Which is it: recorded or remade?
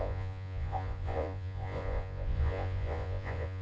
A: remade